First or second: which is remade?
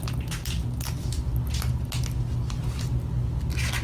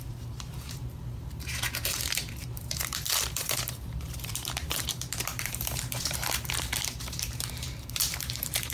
second